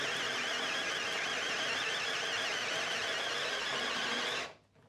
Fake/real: real